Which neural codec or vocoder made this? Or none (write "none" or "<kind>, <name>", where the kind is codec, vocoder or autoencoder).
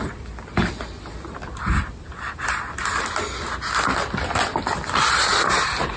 none